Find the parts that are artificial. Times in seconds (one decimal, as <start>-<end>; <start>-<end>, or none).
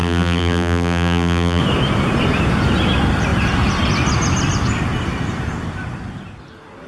0.0-1.6